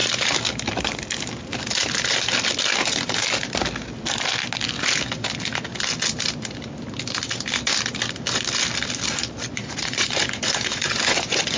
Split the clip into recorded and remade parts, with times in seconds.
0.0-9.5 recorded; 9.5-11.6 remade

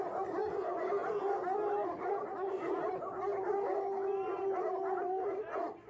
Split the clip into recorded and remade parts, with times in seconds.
0.0-5.9 recorded

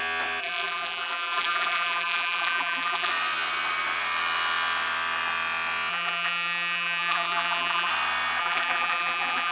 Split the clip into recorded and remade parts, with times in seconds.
0.0-0.4 recorded; 0.4-3.1 remade; 3.1-5.9 recorded; 5.9-7.9 remade; 7.9-8.4 recorded; 8.4-9.5 remade